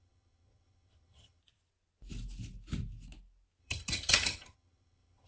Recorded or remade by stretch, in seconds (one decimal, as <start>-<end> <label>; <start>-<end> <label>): 0.0-1.4 remade; 1.4-3.6 recorded; 3.6-5.3 remade